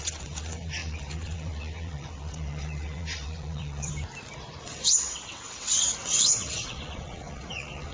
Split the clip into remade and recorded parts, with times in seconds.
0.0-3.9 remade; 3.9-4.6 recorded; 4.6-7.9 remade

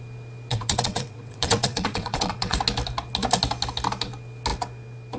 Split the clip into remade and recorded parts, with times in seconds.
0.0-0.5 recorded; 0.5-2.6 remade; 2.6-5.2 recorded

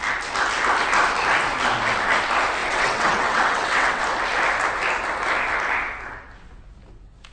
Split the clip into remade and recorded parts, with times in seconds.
0.0-2.6 recorded; 2.6-4.0 remade; 4.0-7.3 recorded

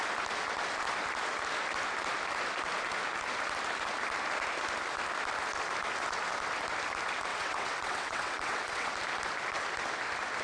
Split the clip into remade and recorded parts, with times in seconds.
0.0-7.3 recorded; 7.3-8.9 remade; 8.9-10.4 recorded